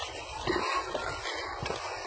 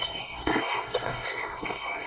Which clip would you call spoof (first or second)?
second